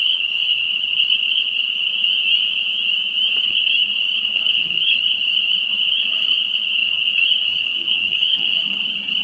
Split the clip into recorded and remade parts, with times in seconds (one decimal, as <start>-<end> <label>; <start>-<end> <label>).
0.0-1.9 remade; 1.9-3.4 recorded; 3.4-9.2 remade